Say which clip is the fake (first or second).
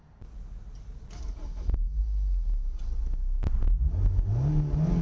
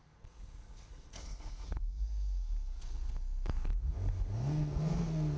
second